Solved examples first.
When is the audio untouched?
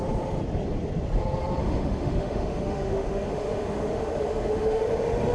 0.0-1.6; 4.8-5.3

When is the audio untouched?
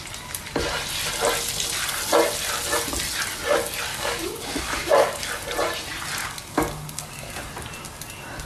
0.0-3.9; 5.3-6.2; 7.5-8.5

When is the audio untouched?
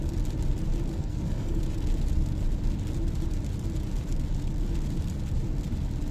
0.0-1.0; 1.6-6.1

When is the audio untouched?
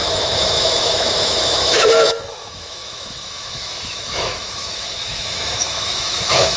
none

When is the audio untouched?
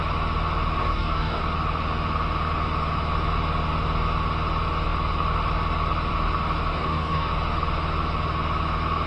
0.0-0.8; 1.4-6.7; 7.3-9.1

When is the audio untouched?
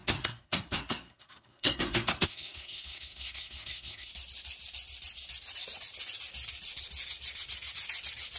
4.1-8.4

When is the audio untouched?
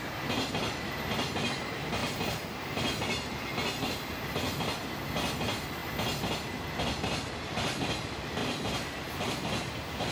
0.0-8.4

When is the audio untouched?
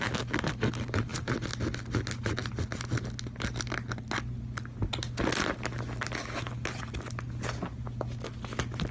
0.0-8.9